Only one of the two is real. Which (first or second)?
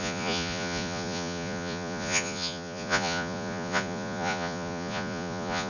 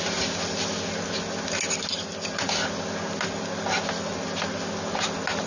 second